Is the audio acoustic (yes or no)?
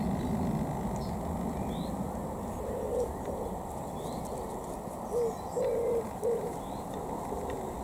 yes